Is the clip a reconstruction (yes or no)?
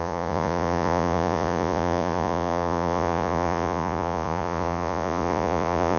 yes